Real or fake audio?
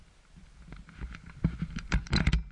real